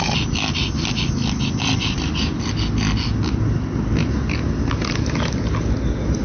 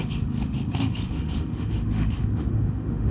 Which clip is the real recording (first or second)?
first